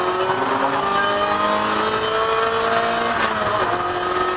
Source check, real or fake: real